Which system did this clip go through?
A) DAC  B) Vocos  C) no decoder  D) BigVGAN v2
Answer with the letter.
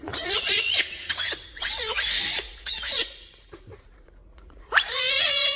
B